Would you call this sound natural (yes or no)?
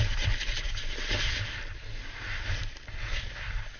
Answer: yes